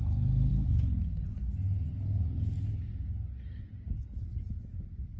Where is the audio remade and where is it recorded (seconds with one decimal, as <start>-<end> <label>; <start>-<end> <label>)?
0.0-5.2 recorded